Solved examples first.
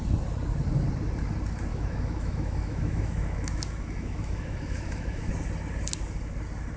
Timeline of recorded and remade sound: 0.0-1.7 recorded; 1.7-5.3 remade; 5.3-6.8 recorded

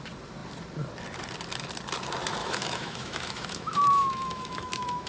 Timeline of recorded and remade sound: 0.0-2.4 recorded; 2.4-5.1 remade

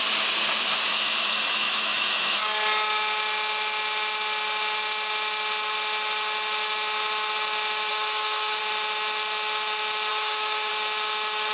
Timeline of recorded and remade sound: 0.0-0.9 recorded; 0.9-2.4 remade; 2.4-7.9 recorded; 7.9-8.6 remade; 8.6-10.1 recorded; 10.1-10.7 remade; 10.7-11.5 recorded

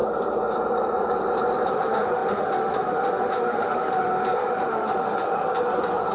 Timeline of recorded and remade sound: 0.0-1.7 recorded; 1.7-6.1 remade

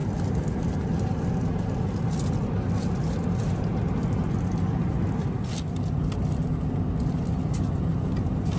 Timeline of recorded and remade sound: 0.0-8.6 recorded